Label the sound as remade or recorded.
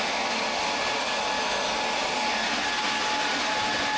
recorded